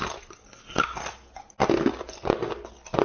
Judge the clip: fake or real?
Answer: real